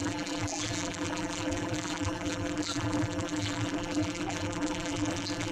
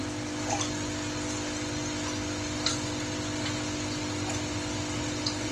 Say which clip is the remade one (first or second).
first